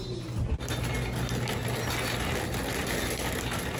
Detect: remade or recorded recorded